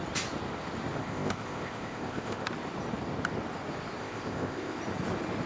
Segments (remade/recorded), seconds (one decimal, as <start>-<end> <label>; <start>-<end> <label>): 0.0-1.0 recorded; 1.0-2.5 remade; 2.5-4.0 recorded; 4.0-4.8 remade; 4.8-5.5 recorded

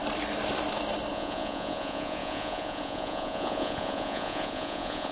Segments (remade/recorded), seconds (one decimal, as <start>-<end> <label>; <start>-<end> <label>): 0.0-1.1 recorded; 1.1-5.1 remade

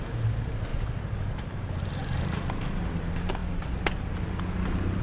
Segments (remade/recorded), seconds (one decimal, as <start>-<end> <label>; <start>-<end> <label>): 0.0-0.7 remade; 0.7-1.3 recorded; 1.3-3.4 remade; 3.4-5.0 recorded

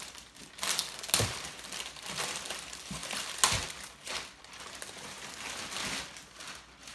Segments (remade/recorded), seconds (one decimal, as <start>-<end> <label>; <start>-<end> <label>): 0.0-6.9 recorded

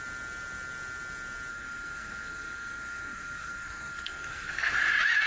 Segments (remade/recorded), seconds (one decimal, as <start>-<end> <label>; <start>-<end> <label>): 0.0-1.5 recorded; 1.5-4.7 remade; 4.7-5.3 recorded

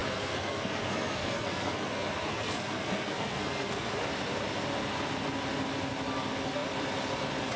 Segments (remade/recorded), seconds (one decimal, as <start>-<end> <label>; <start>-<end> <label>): 0.0-3.9 remade; 3.9-7.6 recorded

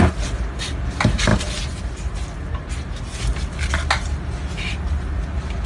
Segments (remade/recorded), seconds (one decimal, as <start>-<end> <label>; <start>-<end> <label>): 0.0-5.7 recorded